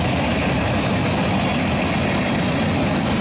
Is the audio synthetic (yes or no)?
no